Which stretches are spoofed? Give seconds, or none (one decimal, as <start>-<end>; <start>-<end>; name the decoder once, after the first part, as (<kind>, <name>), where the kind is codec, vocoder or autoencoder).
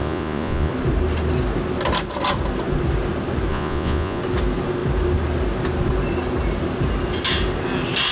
0.0-0.7 (vocoder, Vocos); 3.5-4.2